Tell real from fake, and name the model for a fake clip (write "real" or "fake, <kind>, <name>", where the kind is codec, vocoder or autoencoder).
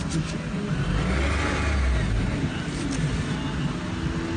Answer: real